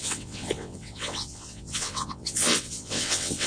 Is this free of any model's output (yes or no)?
no